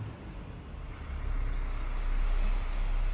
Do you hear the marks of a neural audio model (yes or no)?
no